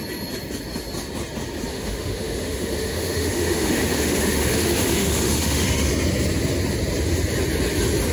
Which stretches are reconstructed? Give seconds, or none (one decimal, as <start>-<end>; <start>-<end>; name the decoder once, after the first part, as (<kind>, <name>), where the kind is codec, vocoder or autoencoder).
1.7-5.9 (autoencoder, DAC-VAE)